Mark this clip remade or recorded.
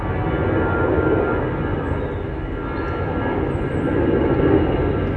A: recorded